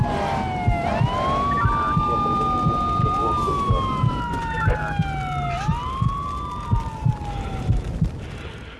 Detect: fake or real real